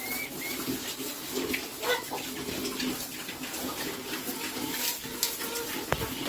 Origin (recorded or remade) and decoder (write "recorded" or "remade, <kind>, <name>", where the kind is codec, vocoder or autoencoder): recorded